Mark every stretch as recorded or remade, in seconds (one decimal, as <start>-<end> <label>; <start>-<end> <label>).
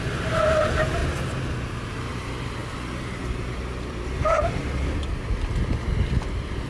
0.0-1.0 remade; 1.0-1.9 recorded; 1.9-6.7 remade